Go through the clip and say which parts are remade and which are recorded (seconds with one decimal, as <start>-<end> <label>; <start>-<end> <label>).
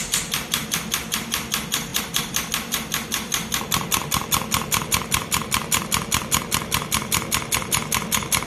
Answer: 0.0-8.5 recorded